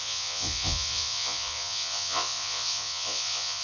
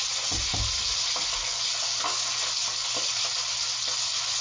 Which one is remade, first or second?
first